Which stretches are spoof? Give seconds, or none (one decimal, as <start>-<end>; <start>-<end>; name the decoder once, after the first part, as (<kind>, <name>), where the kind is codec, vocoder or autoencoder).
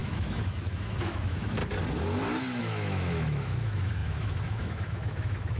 0.0-1.6 (autoencoder, DAC-VAE); 2.6-5.6